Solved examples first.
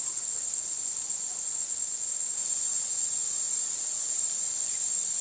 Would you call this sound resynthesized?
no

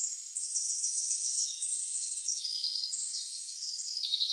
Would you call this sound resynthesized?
yes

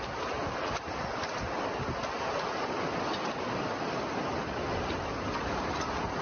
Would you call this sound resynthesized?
no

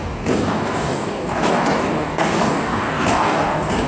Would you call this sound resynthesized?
yes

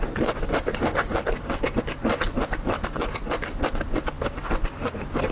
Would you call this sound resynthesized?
no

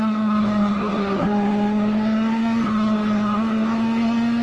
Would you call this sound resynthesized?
yes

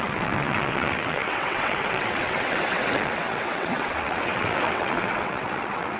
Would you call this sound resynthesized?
yes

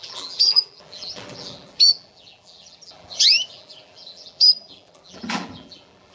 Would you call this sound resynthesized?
yes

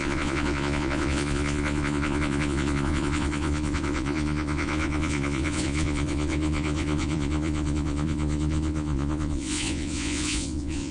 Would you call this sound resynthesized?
yes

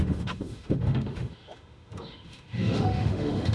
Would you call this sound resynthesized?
yes